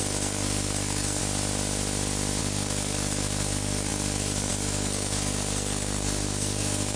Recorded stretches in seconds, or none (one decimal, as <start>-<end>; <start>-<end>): 1.2-2.4